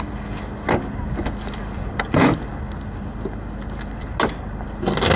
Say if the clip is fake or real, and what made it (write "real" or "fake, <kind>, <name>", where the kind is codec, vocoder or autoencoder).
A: real